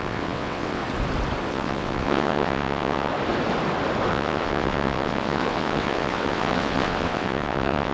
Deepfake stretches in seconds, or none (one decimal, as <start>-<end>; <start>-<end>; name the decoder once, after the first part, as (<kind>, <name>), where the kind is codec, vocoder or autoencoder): 0.0-0.8 (vocoder, WaveNeXt); 1.5-3.1; 4.1-7.9